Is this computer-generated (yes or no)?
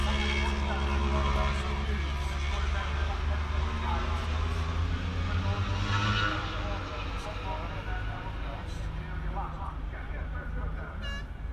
no